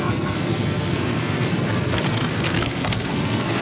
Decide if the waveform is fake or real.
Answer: fake